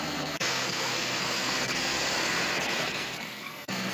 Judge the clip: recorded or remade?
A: remade